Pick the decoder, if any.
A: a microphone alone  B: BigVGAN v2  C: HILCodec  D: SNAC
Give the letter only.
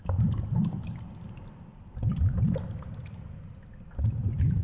A